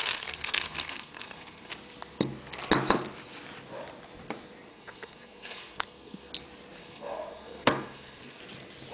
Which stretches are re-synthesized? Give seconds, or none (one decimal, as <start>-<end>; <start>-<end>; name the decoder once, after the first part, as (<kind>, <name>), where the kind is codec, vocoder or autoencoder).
0.0-1.7 (codec, SNAC); 4.7-6.3; 6.8-8.4